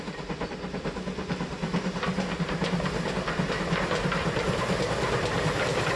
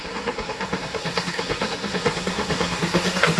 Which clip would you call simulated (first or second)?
second